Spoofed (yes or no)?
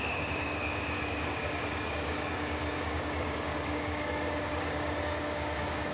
yes